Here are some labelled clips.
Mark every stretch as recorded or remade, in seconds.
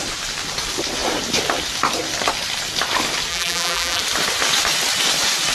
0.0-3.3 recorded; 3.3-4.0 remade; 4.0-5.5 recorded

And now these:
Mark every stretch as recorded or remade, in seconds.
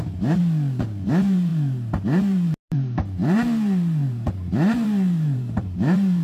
0.0-0.4 remade; 0.4-1.1 recorded; 1.1-6.2 remade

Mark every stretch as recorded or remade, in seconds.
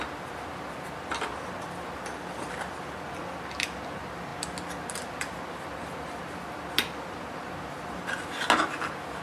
0.0-9.2 recorded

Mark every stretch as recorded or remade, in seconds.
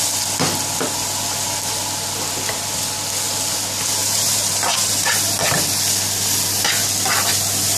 0.0-4.0 recorded; 4.0-5.1 remade; 5.1-7.8 recorded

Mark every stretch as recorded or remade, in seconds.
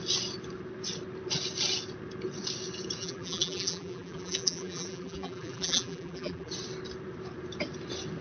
0.0-3.0 recorded; 3.0-6.5 remade; 6.5-8.2 recorded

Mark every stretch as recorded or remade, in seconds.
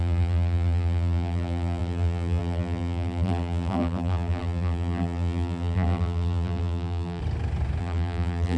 0.0-7.2 remade; 7.2-7.8 recorded; 7.8-8.6 remade